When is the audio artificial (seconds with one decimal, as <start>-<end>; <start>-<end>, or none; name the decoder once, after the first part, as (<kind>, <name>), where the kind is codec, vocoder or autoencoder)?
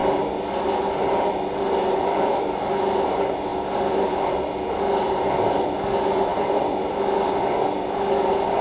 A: 6.3-7.6 (vocoder, BigVGAN v2)